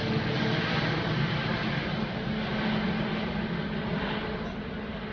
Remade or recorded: recorded